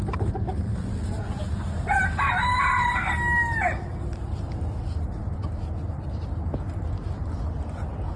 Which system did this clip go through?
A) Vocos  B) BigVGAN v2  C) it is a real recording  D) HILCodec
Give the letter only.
C